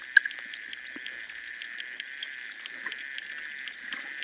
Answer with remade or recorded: recorded